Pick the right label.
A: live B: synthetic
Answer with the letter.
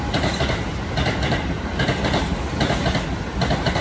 A